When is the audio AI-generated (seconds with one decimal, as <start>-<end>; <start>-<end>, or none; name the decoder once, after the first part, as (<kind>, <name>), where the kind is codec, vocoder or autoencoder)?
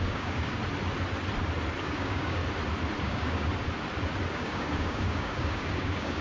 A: 0.0-0.6 (codec, DAC); 1.8-2.4; 3.0-3.5; 4.3-6.2